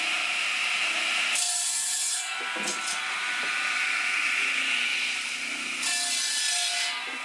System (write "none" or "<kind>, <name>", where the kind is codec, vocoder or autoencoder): none